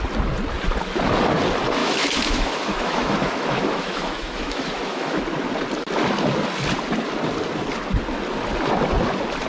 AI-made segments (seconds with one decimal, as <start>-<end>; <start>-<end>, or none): 1.8-5.2